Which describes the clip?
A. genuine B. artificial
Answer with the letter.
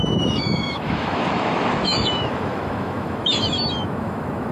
B